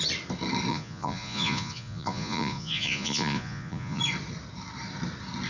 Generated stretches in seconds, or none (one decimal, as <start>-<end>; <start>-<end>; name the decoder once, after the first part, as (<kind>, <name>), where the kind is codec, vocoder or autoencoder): 0.7-4.0 (vocoder, Vocos)